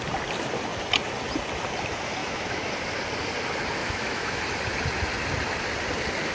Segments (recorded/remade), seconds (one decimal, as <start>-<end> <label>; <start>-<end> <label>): 0.0-2.2 recorded; 2.2-2.7 remade; 2.7-3.8 recorded; 3.8-4.4 remade; 4.4-6.3 recorded